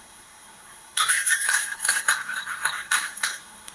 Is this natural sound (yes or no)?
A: no